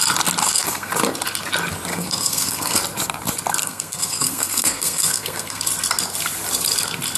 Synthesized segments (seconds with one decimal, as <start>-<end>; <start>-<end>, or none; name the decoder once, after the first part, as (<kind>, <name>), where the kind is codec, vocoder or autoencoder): 0.4-0.9 (codec, SNAC); 1.9-2.8; 3.6-5.6